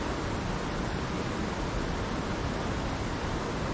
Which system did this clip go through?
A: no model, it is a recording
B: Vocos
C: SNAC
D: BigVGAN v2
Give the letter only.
A